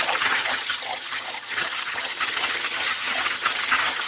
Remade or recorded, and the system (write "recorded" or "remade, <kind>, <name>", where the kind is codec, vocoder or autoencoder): remade, vocoder, HiFi-GAN